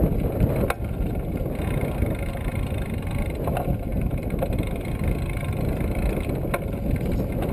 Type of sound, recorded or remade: recorded